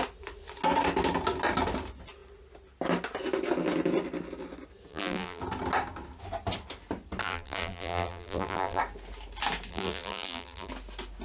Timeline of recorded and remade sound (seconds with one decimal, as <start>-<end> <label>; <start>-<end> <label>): 0.0-4.9 recorded; 4.9-5.4 remade; 5.4-7.2 recorded; 7.2-8.8 remade; 8.8-9.7 recorded; 9.7-10.7 remade; 10.7-11.2 recorded